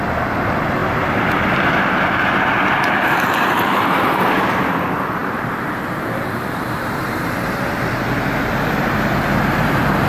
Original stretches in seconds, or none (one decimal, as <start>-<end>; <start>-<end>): none